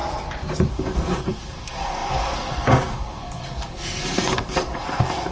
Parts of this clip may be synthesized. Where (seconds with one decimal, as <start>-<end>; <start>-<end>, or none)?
0.7-5.3